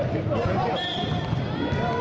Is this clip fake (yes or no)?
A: no